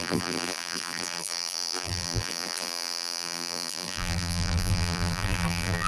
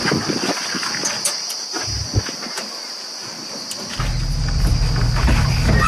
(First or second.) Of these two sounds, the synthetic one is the first